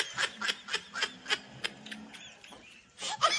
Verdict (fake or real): real